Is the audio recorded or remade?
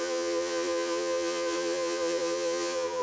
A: remade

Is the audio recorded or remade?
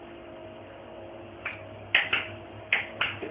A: recorded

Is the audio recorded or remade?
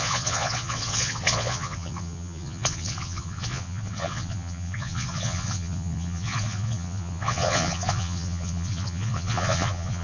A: remade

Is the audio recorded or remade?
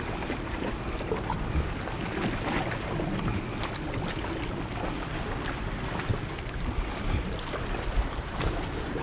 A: recorded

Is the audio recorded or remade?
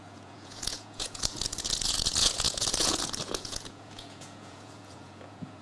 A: remade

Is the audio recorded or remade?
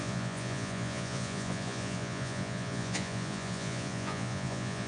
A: remade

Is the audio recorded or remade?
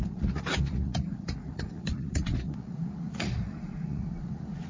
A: remade